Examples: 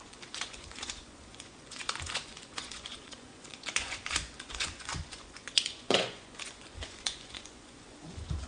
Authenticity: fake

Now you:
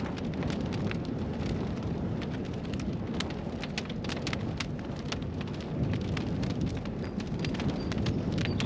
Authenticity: real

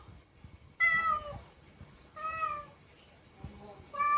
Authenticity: real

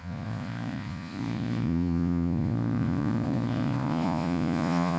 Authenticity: fake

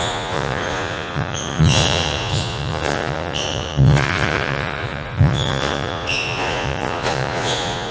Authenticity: fake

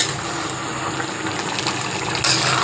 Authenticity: real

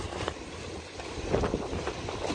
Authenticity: real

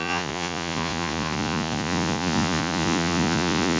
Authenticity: fake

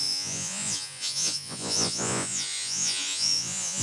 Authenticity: fake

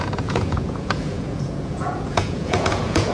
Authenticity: fake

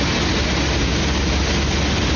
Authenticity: real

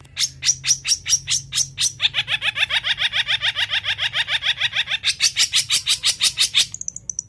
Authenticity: real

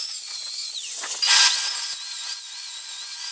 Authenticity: fake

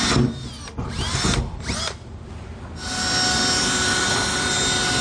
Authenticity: real